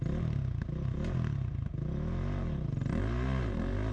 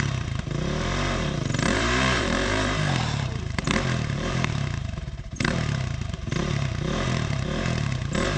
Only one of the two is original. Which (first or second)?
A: first